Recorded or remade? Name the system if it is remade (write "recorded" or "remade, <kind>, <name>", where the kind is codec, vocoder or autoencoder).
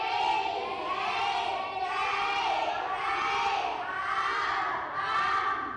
recorded